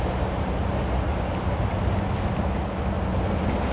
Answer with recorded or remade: recorded